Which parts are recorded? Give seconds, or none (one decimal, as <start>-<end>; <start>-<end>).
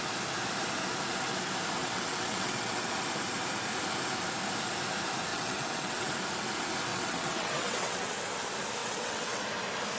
0.0-1.8; 2.9-5.3; 6.1-6.9; 8.1-8.8; 9.4-10.0